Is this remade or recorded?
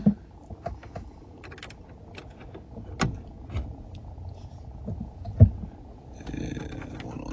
recorded